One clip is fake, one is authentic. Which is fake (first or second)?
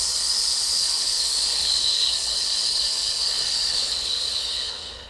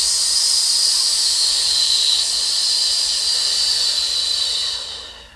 first